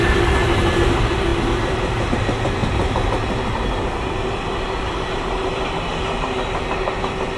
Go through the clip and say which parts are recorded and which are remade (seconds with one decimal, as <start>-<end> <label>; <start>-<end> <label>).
0.0-7.4 recorded